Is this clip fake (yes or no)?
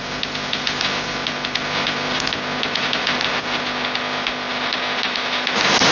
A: no